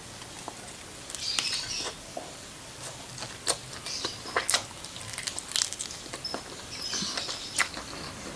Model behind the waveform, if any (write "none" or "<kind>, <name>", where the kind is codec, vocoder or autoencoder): none